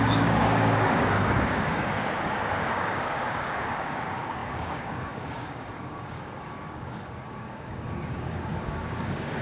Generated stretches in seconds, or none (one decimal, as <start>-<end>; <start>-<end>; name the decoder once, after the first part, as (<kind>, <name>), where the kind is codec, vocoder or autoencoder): 0.0-9.4 (codec, DAC)